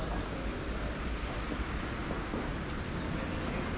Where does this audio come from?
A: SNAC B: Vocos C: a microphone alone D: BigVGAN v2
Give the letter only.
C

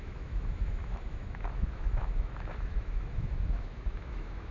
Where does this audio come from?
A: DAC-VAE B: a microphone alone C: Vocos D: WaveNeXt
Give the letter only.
A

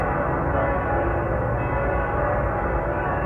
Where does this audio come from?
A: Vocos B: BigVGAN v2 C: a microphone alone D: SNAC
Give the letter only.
C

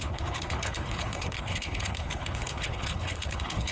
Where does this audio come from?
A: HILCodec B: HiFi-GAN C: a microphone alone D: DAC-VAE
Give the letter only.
A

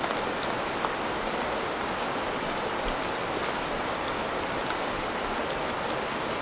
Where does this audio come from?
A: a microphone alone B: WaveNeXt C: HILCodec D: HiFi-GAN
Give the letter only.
A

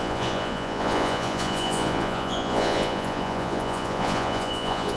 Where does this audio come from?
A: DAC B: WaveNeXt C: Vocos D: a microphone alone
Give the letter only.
C